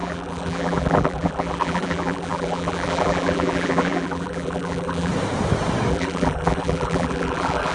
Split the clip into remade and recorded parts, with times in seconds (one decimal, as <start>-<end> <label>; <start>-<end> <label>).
0.0-5.1 remade; 5.1-5.9 recorded; 5.9-7.7 remade